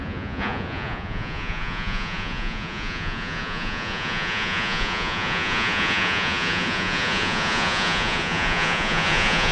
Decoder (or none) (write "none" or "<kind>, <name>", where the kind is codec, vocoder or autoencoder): vocoder, Vocos